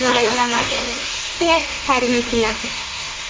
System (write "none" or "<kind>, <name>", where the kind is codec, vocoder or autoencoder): codec, SNAC